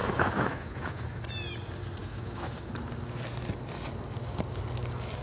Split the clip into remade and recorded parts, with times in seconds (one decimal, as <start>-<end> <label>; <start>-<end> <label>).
0.0-1.2 remade; 1.2-2.0 recorded; 2.0-2.7 remade; 2.7-5.2 recorded